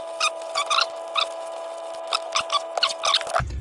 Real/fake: real